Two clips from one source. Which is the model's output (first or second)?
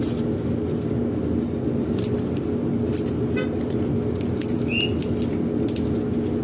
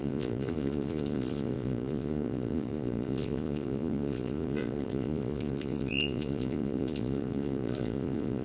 second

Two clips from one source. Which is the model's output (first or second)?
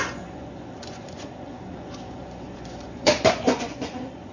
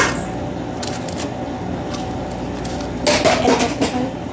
first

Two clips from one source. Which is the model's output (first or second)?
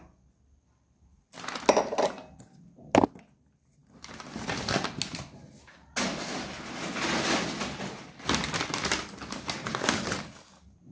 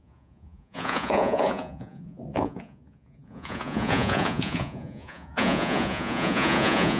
second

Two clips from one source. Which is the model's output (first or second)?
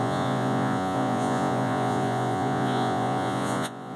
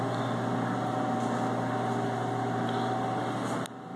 first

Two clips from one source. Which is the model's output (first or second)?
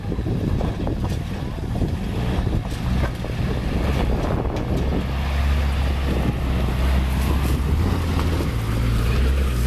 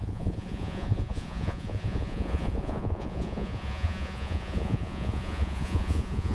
second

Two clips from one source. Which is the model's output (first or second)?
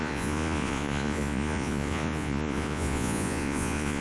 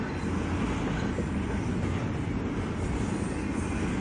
first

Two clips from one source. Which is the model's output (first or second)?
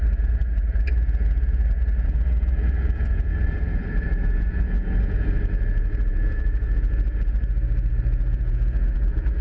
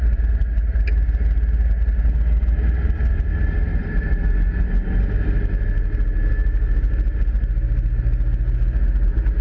first